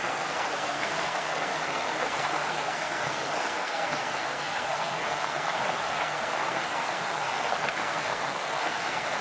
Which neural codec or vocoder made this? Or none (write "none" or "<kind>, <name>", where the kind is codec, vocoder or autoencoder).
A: codec, SNAC